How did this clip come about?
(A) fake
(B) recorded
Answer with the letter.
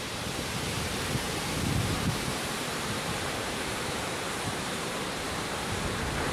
A